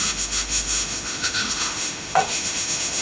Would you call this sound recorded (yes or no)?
no